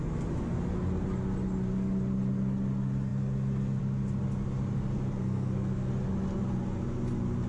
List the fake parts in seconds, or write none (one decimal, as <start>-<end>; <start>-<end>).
5.2-5.9